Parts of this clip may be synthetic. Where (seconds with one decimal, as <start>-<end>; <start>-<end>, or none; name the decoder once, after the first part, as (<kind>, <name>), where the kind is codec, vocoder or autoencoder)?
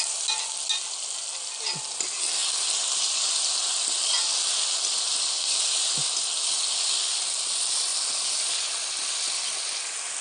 none